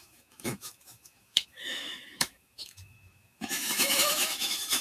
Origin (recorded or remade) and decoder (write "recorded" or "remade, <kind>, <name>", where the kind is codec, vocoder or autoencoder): remade, autoencoder, DAC-VAE